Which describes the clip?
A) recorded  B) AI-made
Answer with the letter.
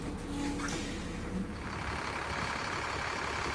A